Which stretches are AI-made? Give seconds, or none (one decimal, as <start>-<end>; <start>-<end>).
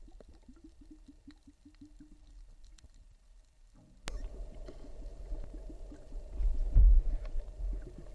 6.4-7.4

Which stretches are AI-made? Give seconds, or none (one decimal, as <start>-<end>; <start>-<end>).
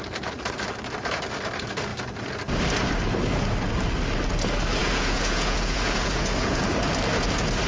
4.8-6.6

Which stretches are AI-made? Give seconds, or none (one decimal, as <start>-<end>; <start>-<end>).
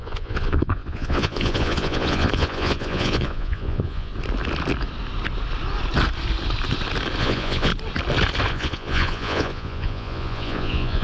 0.0-4.1; 7.2-7.7; 8.5-11.0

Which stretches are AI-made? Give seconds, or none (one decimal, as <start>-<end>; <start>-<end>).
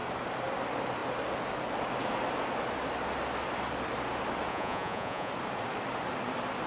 4.5-5.3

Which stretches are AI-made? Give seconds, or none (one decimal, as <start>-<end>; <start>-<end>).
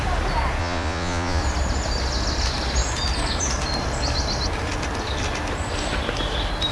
0.6-1.4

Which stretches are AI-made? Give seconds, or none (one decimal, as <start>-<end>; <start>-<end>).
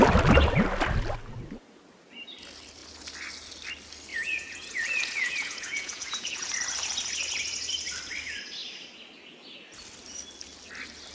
4.1-6.5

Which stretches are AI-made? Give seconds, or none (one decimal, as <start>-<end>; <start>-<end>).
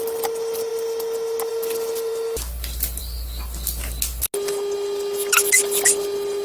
none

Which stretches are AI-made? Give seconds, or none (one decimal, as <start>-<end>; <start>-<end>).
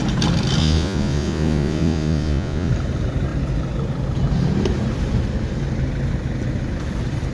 0.6-2.7